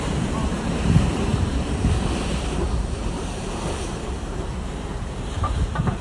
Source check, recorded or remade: remade